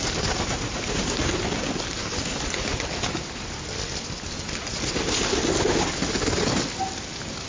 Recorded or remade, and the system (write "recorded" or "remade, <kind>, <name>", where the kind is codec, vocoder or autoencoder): recorded